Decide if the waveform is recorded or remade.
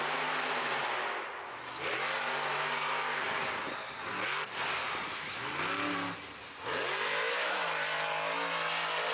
recorded